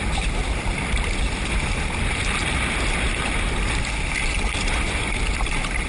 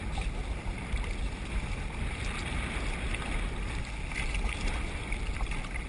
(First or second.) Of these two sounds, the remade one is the first